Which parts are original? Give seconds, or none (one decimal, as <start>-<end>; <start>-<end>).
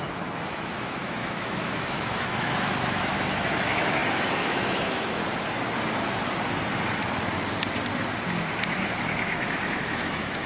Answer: 5.2-9.0